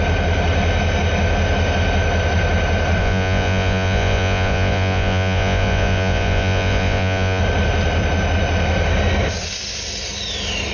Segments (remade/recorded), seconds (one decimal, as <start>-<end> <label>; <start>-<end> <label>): 0.0-3.0 recorded; 3.0-7.4 remade; 7.4-10.7 recorded